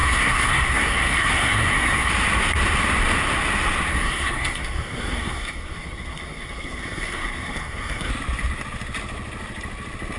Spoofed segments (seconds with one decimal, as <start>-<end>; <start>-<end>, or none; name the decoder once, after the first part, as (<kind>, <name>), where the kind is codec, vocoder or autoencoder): 0.0-2.1 (codec, SNAC); 3.9-8.1